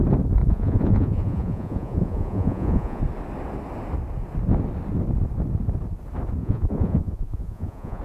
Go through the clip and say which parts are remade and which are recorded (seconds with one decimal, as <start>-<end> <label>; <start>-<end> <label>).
0.0-0.4 recorded; 0.4-3.0 remade; 3.0-6.4 recorded; 6.4-8.0 remade